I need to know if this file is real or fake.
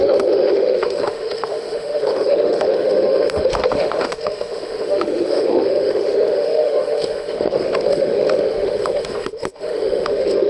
fake